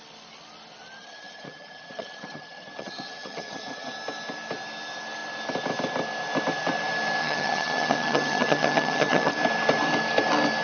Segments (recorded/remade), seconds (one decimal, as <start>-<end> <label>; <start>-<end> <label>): 0.0-1.0 recorded; 1.0-3.9 remade; 3.9-7.2 recorded; 7.2-9.3 remade; 9.3-10.6 recorded